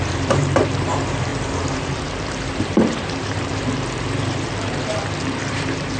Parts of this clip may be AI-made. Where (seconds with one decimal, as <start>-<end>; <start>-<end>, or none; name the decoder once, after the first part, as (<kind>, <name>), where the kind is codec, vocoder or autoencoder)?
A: 0.0-6.0 (vocoder, BigVGAN v2)